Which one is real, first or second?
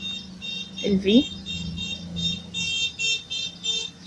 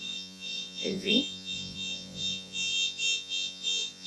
first